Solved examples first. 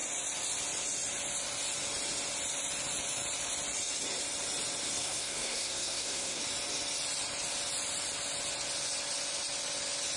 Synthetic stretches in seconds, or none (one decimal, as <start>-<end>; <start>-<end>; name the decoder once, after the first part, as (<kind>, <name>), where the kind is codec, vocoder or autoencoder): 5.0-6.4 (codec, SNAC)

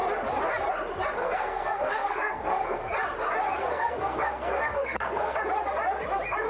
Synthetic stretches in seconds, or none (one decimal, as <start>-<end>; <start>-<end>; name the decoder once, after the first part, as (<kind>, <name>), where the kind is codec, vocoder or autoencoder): 1.2-2.9 (codec, SNAC); 3.6-5.4

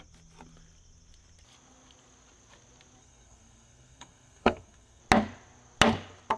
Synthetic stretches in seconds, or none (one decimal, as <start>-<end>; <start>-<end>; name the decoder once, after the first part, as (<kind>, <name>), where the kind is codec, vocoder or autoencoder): 3.0-5.0 (codec, SNAC)

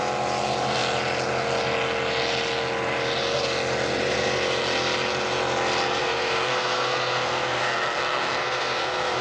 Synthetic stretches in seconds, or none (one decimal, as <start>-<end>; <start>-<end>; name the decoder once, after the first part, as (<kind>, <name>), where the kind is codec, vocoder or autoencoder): 6.0-9.2 (codec, SNAC)